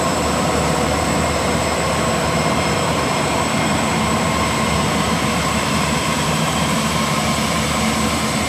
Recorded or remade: remade